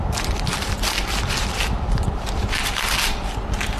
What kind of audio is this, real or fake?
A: fake